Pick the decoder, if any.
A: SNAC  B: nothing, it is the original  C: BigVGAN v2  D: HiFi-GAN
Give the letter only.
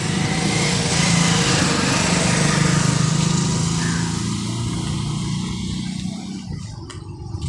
B